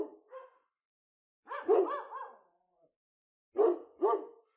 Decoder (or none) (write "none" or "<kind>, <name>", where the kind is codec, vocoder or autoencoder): none